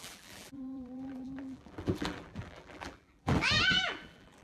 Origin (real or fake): fake